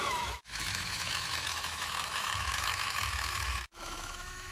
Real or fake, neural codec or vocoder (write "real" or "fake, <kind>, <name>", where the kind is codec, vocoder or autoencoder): fake, autoencoder, DAC-VAE